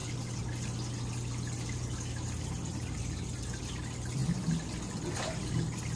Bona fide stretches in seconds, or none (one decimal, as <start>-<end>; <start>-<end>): 0.0-6.0